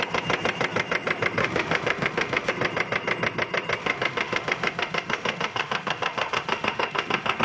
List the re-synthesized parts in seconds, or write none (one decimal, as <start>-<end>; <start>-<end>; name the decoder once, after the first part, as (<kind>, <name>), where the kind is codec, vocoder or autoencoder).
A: 1.4-2.5 (autoencoder, DAC-VAE); 3.8-7.4

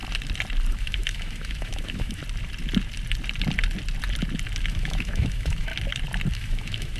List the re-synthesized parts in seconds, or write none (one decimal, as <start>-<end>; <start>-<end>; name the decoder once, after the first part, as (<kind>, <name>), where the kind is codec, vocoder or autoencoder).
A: 0.7-2.2 (autoencoder, DAC-VAE); 4.6-5.7; 6.3-7.0

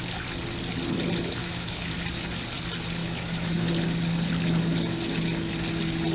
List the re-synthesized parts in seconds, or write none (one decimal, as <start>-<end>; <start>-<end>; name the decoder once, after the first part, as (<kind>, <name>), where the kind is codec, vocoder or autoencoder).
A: 1.4-1.9 (autoencoder, DAC-VAE); 3.0-3.7

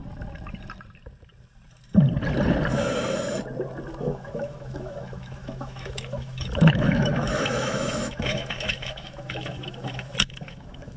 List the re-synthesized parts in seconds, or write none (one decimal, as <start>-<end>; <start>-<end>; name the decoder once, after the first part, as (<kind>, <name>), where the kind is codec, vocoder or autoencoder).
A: 4.0-11.0 (autoencoder, DAC-VAE)

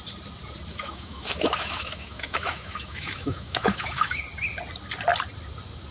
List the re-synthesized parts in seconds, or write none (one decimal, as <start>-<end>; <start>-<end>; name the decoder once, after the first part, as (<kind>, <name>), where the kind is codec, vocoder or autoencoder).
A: 0.7-4.2 (autoencoder, DAC-VAE)

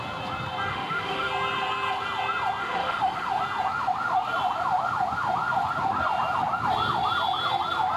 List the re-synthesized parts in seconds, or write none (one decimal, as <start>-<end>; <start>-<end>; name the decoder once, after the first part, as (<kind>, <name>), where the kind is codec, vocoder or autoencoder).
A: 0.7-1.3 (autoencoder, DAC-VAE); 2.6-3.3